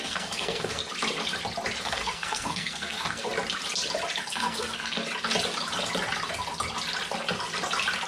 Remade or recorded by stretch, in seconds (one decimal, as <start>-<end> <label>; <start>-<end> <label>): 0.0-0.8 remade; 0.8-1.8 recorded; 1.8-3.3 remade; 3.3-4.2 recorded; 4.2-5.0 remade; 5.0-8.1 recorded